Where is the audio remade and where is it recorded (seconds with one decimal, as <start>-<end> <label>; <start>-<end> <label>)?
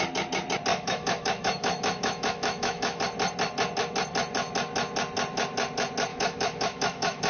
0.0-0.7 recorded; 0.7-3.0 remade; 3.0-6.1 recorded; 6.1-7.3 remade